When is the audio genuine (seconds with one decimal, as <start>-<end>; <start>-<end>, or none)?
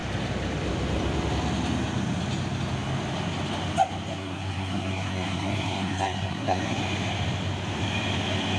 0.0-4.1; 6.8-8.6